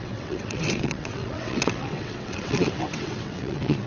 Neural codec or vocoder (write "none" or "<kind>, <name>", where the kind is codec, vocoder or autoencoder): vocoder, WaveNeXt